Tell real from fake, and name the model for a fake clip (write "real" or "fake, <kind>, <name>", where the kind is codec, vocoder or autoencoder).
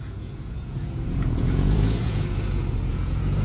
fake, vocoder, Vocos